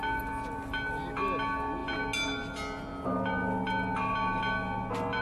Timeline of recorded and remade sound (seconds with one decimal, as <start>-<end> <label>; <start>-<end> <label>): 0.0-5.2 recorded